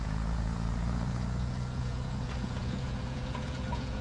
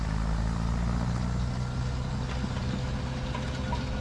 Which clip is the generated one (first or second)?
first